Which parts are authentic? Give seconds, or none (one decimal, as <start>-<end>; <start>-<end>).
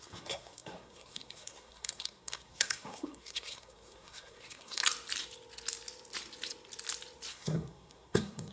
4.8-7.3